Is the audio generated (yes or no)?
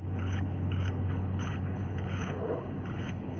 yes